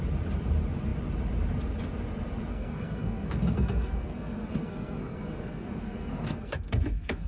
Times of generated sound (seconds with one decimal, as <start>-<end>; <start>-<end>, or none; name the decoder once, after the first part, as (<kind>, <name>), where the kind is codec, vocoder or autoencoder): 2.5-7.3 (codec, SNAC)